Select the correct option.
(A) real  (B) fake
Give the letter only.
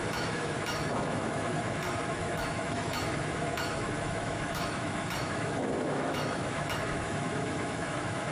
B